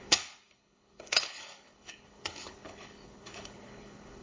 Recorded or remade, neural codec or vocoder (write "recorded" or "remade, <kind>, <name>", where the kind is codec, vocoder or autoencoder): remade, codec, HILCodec